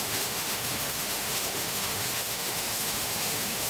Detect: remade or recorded remade